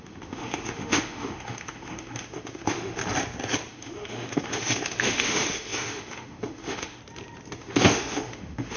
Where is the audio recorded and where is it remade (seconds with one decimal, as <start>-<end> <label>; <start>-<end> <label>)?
0.0-3.0 remade; 3.0-3.7 recorded; 3.7-7.0 remade; 7.0-7.6 recorded; 7.6-8.8 remade